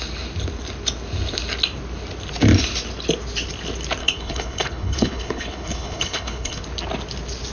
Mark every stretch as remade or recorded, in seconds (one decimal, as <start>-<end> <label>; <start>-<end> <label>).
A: 0.0-4.0 recorded; 4.0-6.6 remade; 6.6-7.5 recorded